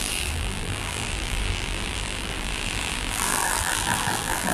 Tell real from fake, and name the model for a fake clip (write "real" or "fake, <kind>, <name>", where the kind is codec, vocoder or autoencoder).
fake, vocoder, BigVGAN v2